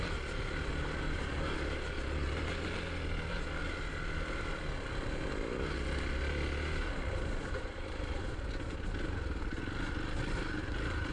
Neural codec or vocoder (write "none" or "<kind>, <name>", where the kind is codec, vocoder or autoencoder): none